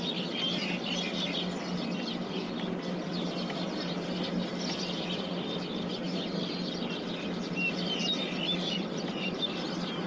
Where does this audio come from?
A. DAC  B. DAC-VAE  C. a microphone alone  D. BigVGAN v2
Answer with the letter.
C